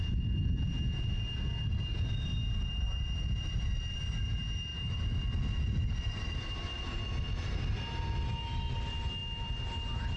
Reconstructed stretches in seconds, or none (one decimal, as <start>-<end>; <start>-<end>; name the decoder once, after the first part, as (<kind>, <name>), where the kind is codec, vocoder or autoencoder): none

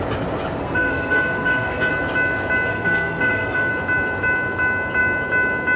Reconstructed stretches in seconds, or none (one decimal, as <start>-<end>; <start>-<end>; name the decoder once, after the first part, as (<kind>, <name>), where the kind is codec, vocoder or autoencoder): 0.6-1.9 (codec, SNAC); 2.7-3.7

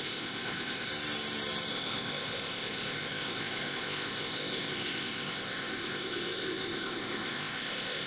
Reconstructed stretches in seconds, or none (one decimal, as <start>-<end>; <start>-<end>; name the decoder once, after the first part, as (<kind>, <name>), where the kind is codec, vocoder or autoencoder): 0.0-0.9 (codec, ZipCodec); 1.7-8.1

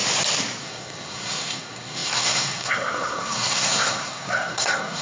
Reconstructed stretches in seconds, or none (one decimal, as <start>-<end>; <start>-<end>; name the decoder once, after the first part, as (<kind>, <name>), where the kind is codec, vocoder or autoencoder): 0.6-5.0 (codec, SNAC)

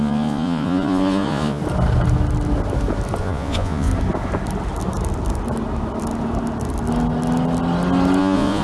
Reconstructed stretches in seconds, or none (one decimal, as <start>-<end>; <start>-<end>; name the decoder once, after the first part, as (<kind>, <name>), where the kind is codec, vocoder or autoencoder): 0.0-1.6 (vocoder, Vocos); 3.2-3.9; 8.2-8.6

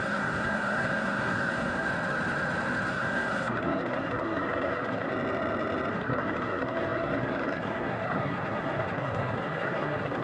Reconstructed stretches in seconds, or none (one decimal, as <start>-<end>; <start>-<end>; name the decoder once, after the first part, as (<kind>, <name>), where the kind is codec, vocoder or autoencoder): 0.0-1.9 (codec, SNAC); 2.9-5.1; 5.9-10.2